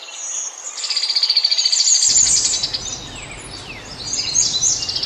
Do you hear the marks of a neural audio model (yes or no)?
no